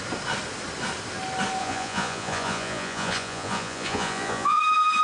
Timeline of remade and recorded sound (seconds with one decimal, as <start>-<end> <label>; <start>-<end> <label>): 0.0-1.6 recorded; 1.6-4.6 remade; 4.6-5.0 recorded